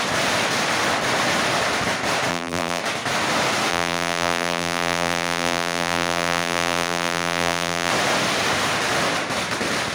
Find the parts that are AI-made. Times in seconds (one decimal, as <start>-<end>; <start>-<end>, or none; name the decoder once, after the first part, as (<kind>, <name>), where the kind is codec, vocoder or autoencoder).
2.3-2.8 (vocoder, BigVGAN v2); 3.7-7.9